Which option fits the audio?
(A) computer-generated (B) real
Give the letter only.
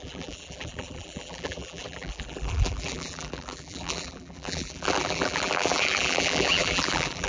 A